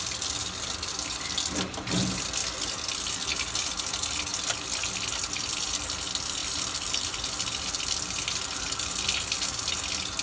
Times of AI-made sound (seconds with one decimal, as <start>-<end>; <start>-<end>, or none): 6.4-9.7